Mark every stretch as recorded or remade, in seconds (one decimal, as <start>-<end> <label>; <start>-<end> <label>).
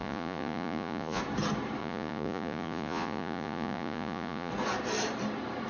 0.0-1.2 remade; 1.2-1.8 recorded; 1.8-4.5 remade; 4.5-5.7 recorded